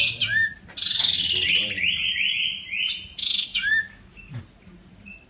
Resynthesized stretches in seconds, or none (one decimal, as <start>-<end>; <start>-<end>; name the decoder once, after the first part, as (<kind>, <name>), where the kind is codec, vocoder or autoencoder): 3.5-4.4 (codec, DAC)